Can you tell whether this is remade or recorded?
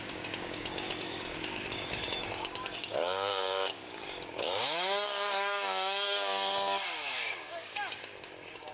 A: remade